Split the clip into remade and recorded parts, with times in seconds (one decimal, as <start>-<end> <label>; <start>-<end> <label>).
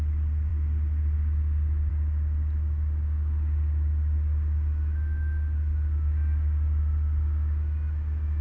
0.0-8.4 recorded